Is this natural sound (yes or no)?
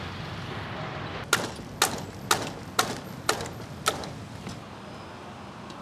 yes